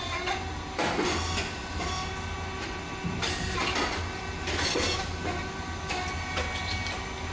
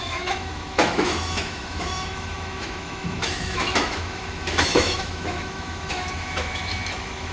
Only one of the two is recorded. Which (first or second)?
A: first